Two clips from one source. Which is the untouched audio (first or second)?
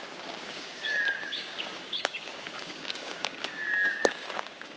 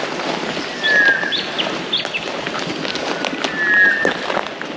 second